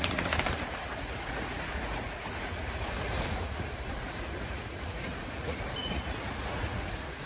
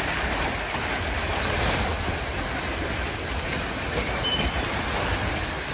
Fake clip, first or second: first